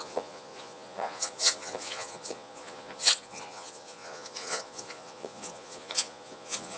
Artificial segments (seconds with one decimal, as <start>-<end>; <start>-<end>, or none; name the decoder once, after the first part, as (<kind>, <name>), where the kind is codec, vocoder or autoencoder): 0.0-6.8 (vocoder, Vocos)